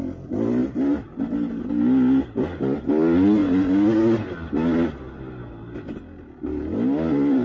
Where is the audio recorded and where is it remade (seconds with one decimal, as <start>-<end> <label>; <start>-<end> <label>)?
0.0-7.4 recorded

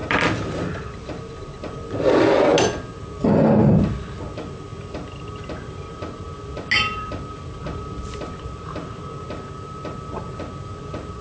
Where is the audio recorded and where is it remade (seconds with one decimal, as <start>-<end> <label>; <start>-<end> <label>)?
0.0-11.2 recorded

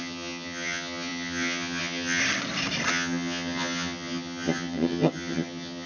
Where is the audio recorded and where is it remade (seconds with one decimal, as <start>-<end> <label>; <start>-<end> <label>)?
0.0-2.2 remade; 2.2-2.9 recorded; 2.9-5.9 remade